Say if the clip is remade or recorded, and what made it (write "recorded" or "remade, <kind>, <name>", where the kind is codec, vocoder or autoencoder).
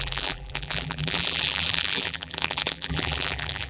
remade, vocoder, BigVGAN v2